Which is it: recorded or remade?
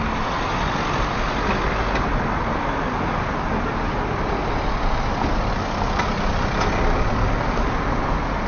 recorded